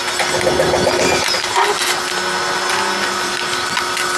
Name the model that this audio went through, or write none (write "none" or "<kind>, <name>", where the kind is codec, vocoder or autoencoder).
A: none